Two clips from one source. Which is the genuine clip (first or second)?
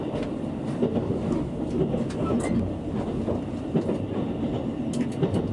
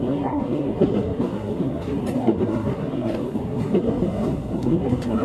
first